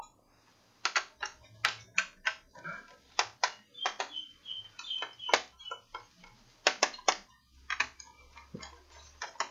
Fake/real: real